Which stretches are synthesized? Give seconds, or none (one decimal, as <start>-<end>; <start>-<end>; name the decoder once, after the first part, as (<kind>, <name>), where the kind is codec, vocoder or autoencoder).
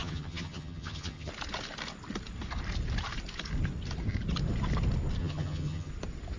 0.0-1.3 (vocoder, HiFi-GAN); 5.2-5.9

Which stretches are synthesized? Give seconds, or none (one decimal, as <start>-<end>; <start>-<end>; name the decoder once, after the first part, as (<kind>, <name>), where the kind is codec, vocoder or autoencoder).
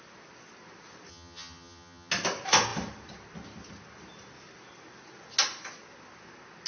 1.1-2.1 (vocoder, HiFi-GAN)